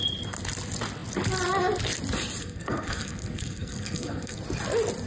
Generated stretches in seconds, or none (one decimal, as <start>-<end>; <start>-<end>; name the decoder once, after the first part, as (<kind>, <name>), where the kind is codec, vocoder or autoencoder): 2.4-4.4 (codec, SNAC)